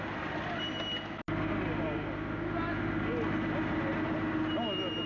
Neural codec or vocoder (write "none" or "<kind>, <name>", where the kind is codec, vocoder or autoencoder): none